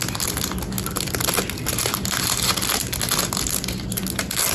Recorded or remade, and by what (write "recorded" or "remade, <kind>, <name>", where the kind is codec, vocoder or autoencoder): recorded